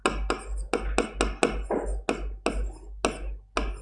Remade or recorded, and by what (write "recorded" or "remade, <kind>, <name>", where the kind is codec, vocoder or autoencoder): recorded